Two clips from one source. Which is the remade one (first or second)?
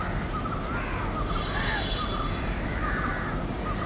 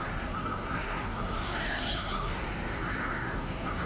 second